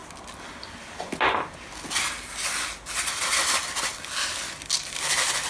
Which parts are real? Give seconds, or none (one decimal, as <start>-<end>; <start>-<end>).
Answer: 0.0-5.5